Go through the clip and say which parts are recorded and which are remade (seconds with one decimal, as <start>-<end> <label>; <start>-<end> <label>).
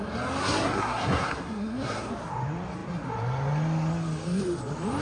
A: 0.0-0.4 recorded; 0.4-2.1 remade; 2.1-5.0 recorded